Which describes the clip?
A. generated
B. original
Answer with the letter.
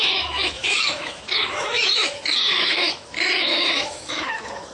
A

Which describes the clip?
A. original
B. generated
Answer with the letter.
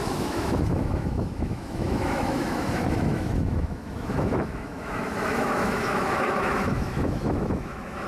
B